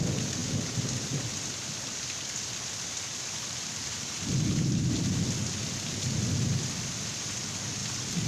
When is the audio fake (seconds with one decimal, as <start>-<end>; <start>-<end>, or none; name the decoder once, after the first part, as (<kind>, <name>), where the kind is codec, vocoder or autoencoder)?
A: none